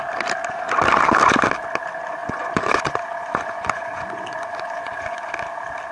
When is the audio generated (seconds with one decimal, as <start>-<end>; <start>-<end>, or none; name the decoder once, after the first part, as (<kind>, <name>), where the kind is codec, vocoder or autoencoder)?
2.2-5.3 (vocoder, Vocos)